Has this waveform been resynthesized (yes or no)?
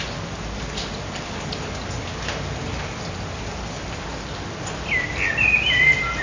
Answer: no